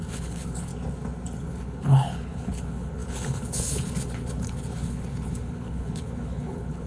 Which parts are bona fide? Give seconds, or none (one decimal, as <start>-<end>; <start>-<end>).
0.7-1.4